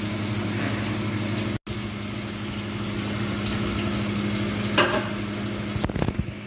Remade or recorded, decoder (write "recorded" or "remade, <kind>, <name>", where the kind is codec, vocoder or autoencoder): recorded